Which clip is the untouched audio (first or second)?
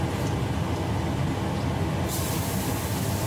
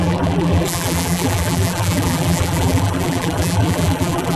first